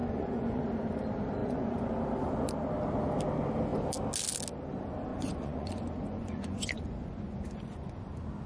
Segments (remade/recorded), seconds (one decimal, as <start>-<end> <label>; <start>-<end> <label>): 0.0-0.6 remade; 0.6-1.4 recorded; 1.4-1.9 remade; 1.9-5.1 recorded; 5.1-8.0 remade; 8.0-8.5 recorded